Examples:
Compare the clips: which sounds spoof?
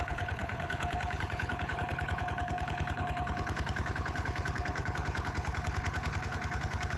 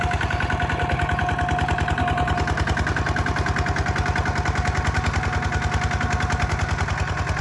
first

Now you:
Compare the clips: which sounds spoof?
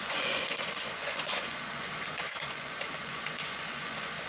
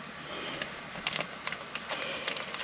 first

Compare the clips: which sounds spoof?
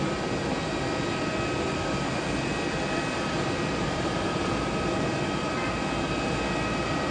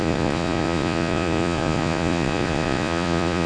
second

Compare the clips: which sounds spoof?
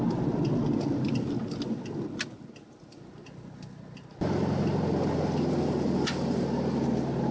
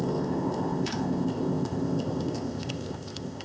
second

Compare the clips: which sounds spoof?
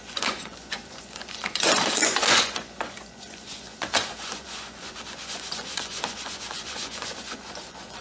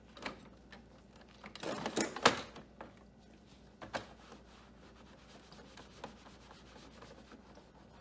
first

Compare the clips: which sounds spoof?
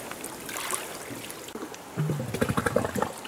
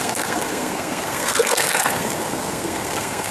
second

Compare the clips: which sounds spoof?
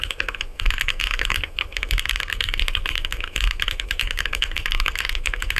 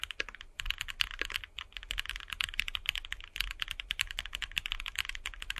first